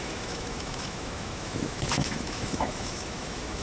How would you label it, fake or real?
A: fake